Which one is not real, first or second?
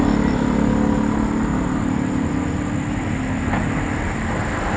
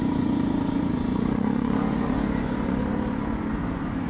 second